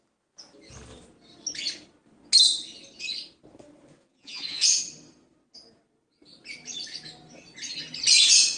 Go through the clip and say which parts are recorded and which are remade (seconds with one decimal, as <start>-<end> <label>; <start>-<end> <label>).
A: 0.0-4.0 recorded; 4.0-4.8 remade; 4.8-8.6 recorded